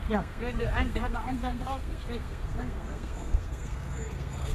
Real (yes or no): no